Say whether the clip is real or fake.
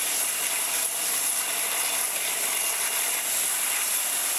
fake